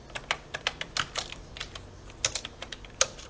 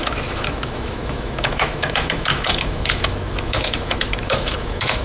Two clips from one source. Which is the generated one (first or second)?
second